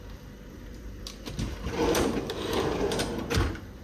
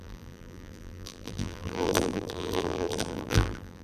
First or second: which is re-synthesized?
second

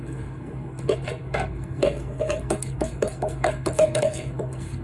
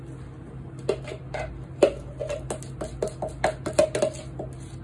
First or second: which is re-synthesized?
first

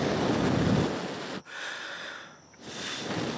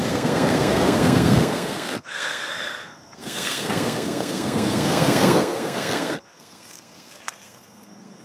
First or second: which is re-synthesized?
second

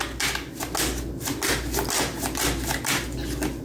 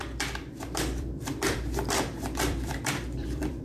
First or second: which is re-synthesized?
second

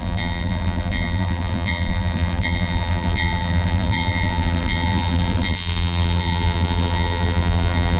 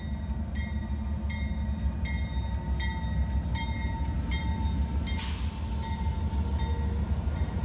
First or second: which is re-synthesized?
first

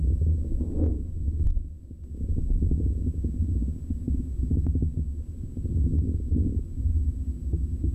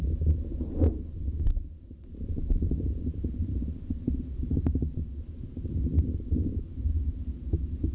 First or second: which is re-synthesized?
second